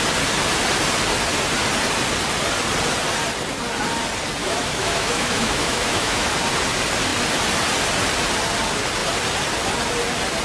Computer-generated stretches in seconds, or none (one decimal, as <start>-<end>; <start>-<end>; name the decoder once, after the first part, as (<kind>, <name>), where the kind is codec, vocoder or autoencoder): 4.4-6.3 (autoencoder, DAC-VAE)